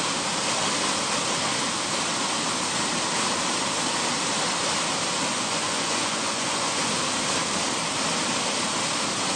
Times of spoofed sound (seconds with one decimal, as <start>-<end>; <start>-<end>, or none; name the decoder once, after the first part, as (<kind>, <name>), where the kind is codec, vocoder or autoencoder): 5.3-6.9 (vocoder, Vocos)